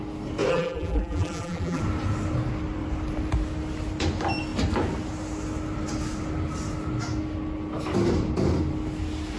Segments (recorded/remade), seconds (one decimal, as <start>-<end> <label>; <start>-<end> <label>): 0.0-0.5 recorded; 0.5-1.8 remade; 1.8-9.4 recorded